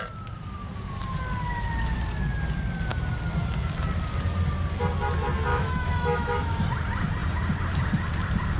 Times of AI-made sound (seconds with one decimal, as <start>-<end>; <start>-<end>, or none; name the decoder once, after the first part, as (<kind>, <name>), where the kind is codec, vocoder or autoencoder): 5.5-6.6 (autoencoder, DAC-VAE)